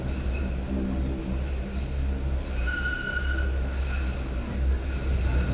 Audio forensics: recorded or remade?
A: recorded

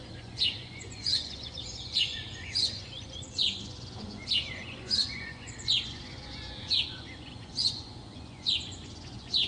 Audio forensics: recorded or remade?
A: remade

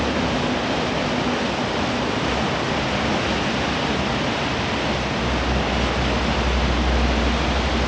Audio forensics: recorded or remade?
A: recorded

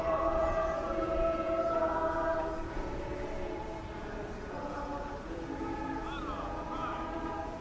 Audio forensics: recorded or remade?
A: remade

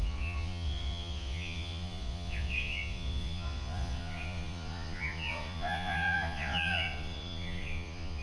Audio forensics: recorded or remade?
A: remade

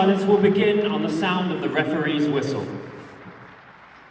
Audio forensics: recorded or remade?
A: recorded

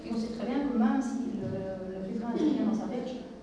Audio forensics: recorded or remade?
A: recorded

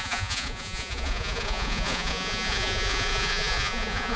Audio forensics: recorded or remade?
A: remade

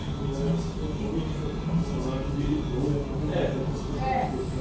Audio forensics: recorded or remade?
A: recorded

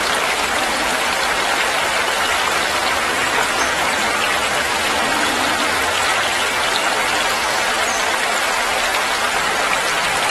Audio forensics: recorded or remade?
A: recorded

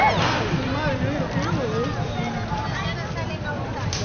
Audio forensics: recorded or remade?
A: recorded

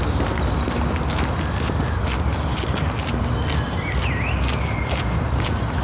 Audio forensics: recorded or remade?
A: recorded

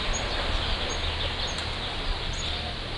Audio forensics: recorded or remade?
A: recorded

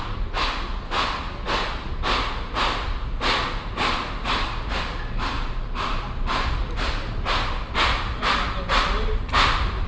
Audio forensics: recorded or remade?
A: recorded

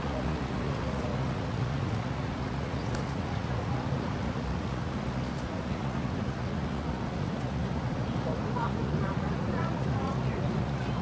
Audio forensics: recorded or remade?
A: remade